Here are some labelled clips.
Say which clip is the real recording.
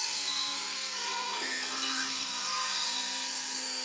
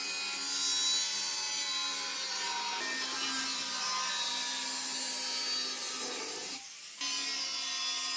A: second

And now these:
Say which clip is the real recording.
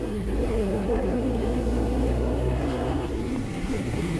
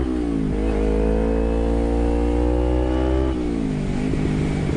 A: second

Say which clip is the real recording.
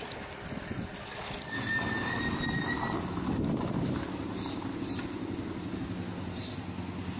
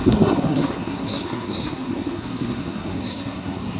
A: first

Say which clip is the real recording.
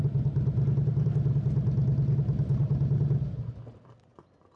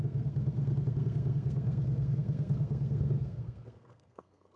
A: first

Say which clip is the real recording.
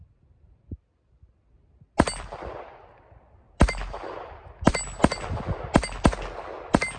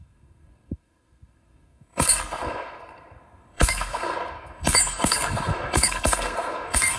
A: first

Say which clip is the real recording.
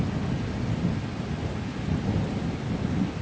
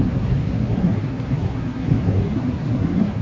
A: first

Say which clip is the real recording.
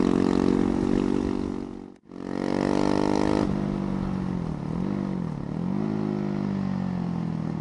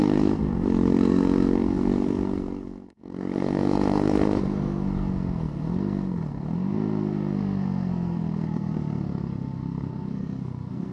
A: first